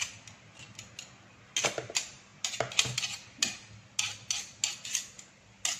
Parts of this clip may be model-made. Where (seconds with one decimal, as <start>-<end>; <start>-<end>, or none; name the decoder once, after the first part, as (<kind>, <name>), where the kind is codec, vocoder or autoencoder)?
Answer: none